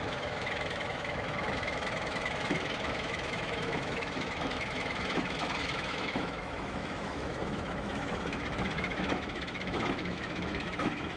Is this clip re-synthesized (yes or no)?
yes